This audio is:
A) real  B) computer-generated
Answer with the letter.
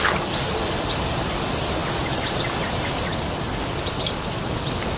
A